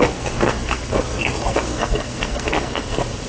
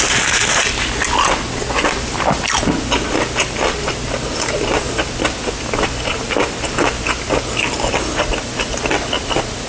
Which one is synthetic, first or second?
first